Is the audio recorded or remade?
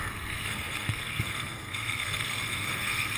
remade